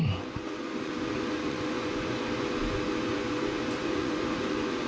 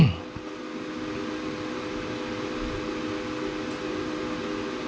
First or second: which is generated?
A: first